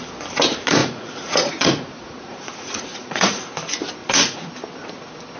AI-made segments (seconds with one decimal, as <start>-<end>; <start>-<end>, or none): 0.8-3.5; 4.0-4.5